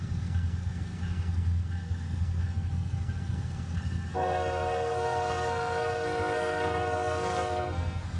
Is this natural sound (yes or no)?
no